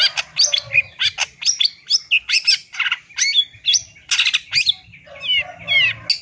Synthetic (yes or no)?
no